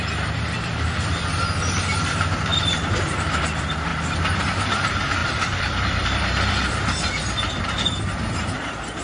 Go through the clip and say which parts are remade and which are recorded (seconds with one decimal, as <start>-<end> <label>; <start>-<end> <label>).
0.0-1.2 remade; 1.2-1.7 recorded; 1.7-3.9 remade; 3.9-4.5 recorded; 4.5-9.0 remade